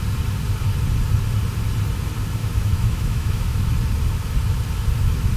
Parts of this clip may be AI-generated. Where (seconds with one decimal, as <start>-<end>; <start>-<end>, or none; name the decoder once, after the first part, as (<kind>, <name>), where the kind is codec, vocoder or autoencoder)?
2.4-3.6 (autoencoder, DAC-VAE)